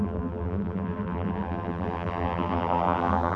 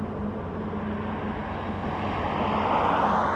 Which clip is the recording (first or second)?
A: second